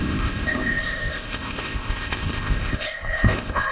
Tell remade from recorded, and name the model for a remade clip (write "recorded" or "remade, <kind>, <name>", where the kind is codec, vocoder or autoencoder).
remade, codec, ZipCodec